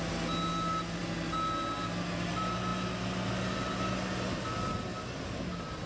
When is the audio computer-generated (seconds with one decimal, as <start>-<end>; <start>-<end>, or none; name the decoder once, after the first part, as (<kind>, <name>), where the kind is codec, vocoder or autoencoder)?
none